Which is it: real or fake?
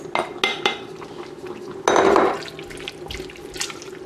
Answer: real